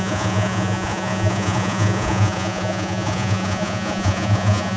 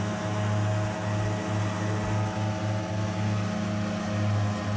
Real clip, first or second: second